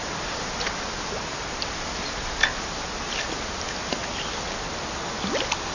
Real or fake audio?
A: real